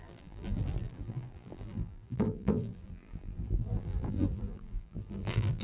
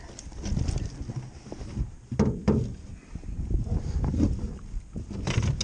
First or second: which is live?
second